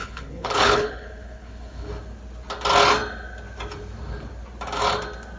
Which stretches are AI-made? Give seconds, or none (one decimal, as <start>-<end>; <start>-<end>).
0.0-1.9